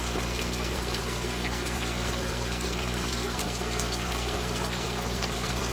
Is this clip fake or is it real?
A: fake